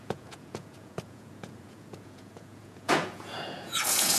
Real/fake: fake